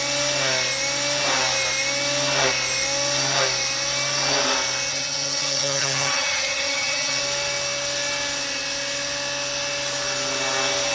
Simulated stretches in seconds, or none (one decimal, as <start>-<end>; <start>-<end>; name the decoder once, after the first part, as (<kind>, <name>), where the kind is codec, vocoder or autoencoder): 4.9-7.2 (vocoder, HiFi-GAN)